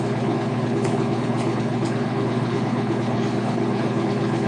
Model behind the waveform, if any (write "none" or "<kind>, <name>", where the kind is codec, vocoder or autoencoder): codec, HILCodec